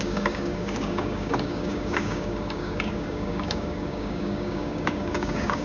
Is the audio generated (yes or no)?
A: yes